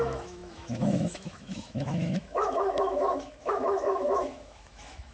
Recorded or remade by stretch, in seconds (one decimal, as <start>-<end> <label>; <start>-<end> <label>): 0.0-5.1 remade